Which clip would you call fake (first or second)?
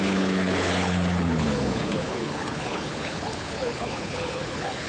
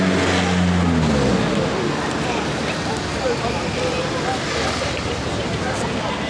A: first